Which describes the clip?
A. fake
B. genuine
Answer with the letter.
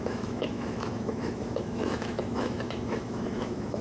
A